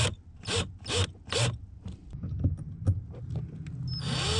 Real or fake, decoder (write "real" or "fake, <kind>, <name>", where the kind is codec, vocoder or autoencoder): real